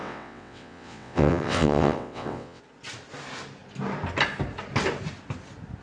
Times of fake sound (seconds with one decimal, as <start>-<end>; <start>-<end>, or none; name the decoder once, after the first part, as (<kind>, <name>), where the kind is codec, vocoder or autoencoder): 0.0-2.6 (vocoder, WaveNeXt)